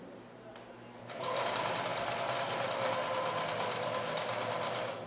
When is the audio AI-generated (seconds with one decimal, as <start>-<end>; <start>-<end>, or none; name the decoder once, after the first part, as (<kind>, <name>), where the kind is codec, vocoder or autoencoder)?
0.0-0.5 (vocoder, BigVGAN v2); 1.0-1.9